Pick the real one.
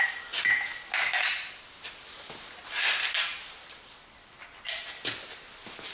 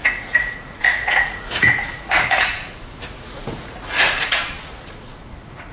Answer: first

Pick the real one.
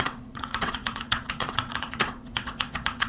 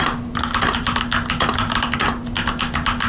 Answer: second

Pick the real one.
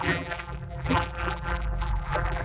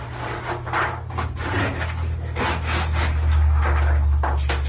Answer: second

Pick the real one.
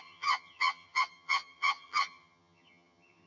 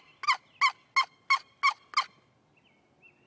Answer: second